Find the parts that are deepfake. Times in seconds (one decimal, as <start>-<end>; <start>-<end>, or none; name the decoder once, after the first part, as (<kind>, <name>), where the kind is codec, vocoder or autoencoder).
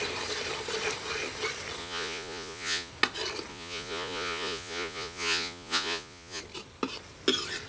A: 1.8-2.9 (vocoder, Vocos); 3.5-6.4